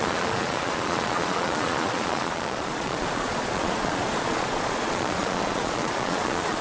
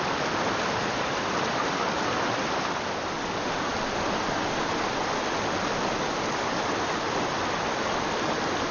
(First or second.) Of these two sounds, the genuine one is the second